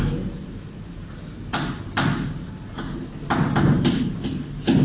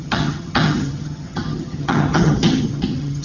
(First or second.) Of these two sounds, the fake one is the second